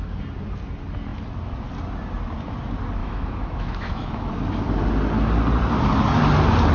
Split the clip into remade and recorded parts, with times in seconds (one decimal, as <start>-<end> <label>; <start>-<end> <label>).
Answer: 0.0-3.0 recorded; 3.0-4.3 remade; 4.3-6.7 recorded